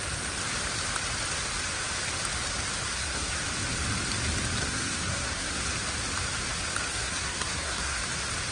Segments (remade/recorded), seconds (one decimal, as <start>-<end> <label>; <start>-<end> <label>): 0.0-2.9 recorded; 2.9-3.4 remade; 3.4-4.6 recorded; 4.6-5.6 remade; 5.6-6.9 recorded; 6.9-8.0 remade; 8.0-8.5 recorded